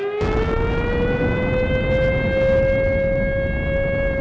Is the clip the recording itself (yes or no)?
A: yes